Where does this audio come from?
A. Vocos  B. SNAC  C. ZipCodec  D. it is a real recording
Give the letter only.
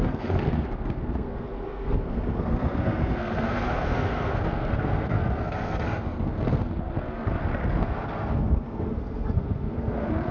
B